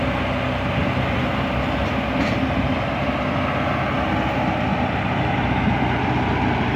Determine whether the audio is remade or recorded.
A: remade